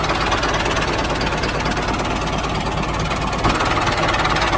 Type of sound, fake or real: real